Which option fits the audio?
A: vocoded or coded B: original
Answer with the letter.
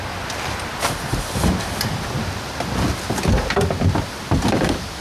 B